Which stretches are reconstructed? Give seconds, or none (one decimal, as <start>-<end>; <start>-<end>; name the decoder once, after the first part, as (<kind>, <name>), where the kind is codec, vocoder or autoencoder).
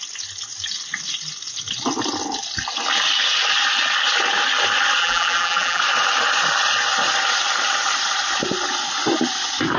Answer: 5.0-5.8 (vocoder, BigVGAN v2)